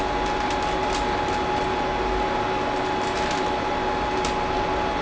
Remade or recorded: recorded